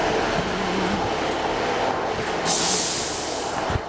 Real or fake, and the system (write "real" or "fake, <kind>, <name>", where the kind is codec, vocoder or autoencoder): real